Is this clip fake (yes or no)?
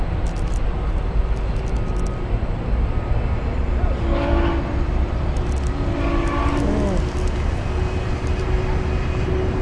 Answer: no